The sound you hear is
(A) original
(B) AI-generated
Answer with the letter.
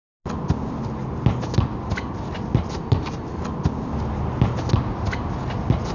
A